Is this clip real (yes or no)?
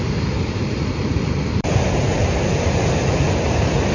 no